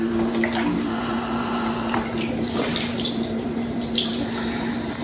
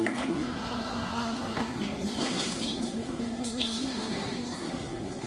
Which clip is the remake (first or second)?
second